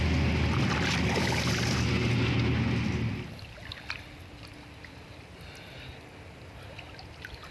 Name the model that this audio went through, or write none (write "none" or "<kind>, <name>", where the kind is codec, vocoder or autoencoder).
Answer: none